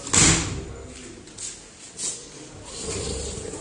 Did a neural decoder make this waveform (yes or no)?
no